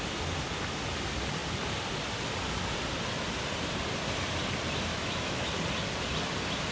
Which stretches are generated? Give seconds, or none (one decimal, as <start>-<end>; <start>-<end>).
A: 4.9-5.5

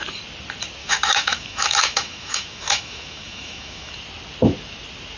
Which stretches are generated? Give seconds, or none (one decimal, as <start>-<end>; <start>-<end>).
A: 0.8-3.9

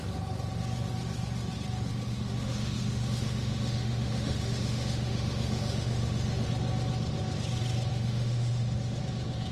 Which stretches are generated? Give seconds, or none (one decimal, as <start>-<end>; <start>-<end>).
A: 2.1-6.5; 7.9-9.0

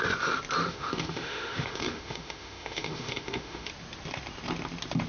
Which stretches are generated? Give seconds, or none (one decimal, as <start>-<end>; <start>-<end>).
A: 0.6-3.7

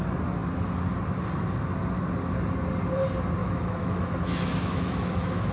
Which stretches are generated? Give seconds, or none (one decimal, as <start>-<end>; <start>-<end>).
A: 3.4-5.5

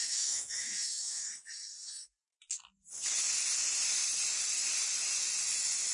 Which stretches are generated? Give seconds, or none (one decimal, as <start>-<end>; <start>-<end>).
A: 0.0-1.2

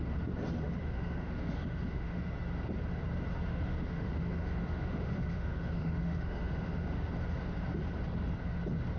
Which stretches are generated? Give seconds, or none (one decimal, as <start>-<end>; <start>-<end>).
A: 0.8-2.2; 3.5-7.1